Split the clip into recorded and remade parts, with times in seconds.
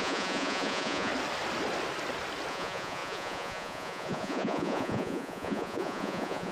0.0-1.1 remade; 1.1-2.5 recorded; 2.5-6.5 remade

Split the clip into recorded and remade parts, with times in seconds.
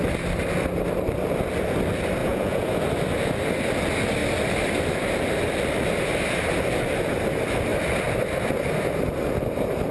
0.0-2.2 recorded; 2.2-2.8 remade; 2.8-9.9 recorded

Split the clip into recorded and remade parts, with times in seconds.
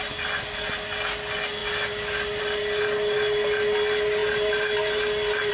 0.0-5.5 recorded